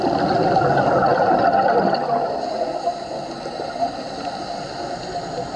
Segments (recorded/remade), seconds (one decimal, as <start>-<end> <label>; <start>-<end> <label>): 0.0-5.6 recorded